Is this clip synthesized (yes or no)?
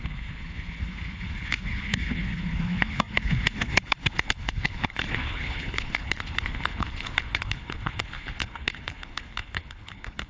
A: yes